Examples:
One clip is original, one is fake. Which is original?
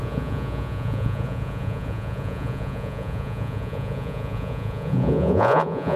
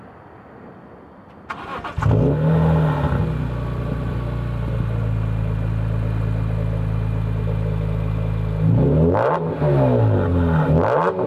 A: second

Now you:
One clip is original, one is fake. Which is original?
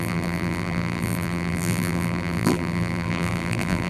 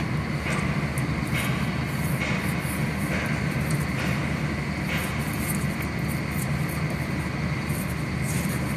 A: second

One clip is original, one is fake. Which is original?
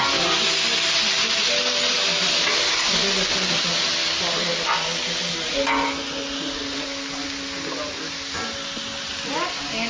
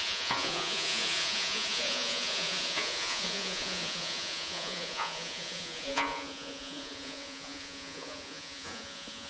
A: first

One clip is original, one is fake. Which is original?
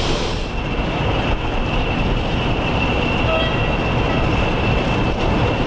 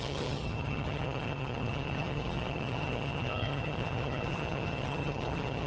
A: first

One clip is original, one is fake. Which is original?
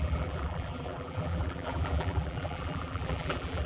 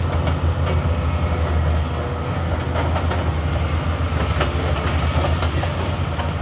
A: second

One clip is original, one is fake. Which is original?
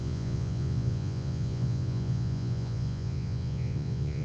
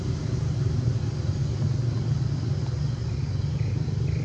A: second